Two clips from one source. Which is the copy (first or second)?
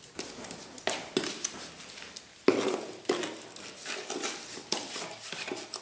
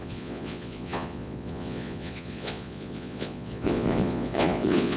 second